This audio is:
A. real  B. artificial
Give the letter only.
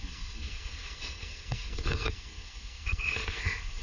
B